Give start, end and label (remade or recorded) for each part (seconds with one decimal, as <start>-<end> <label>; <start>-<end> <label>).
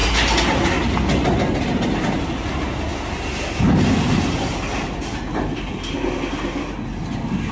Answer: 0.0-7.5 recorded